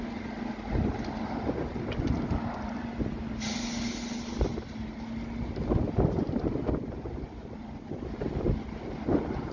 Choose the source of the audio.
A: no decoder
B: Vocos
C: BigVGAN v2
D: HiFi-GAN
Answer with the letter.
A